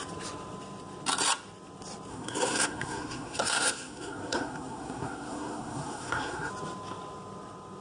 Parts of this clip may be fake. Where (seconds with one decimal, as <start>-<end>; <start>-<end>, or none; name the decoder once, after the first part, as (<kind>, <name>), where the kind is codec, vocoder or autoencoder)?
2.1-6.5 (codec, SNAC)